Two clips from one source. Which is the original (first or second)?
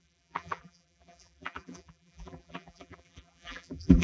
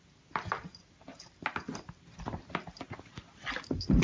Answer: second